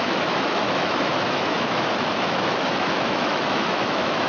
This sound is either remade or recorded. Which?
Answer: remade